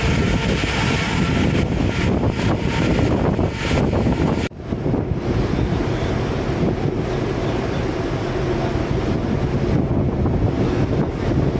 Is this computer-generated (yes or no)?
no